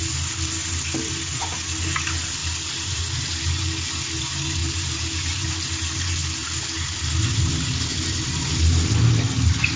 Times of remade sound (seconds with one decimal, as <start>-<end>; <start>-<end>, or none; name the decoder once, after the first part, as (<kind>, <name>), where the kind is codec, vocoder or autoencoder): 2.4-3.0 (vocoder, BigVGAN v2); 4.6-5.5